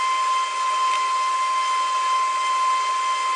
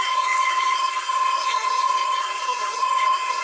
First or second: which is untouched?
first